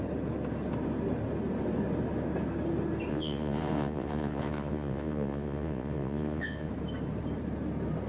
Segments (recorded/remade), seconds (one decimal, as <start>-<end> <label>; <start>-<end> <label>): 0.0-3.1 recorded; 3.1-6.7 remade; 6.7-8.1 recorded